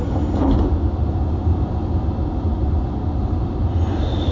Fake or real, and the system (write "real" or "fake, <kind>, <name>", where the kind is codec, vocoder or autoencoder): real